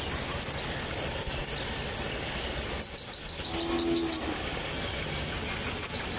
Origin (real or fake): real